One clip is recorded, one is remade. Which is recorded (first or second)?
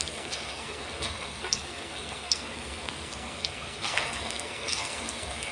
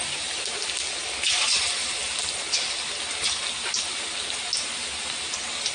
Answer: second